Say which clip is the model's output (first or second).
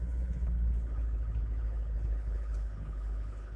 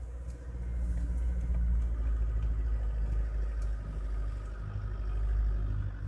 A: first